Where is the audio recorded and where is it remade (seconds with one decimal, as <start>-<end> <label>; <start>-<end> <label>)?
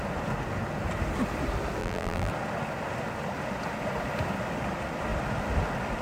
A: 0.0-1.8 recorded; 1.8-2.3 remade; 2.3-6.0 recorded